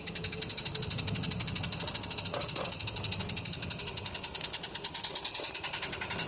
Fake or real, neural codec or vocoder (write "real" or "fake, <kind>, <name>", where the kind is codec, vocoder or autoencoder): real